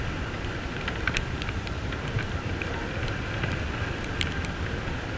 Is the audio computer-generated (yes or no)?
yes